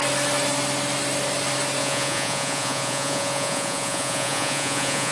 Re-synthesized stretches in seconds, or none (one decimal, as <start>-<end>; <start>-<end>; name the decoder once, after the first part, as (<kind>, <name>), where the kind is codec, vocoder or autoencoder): 1.8-5.1 (vocoder, Vocos)